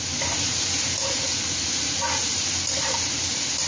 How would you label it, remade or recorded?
remade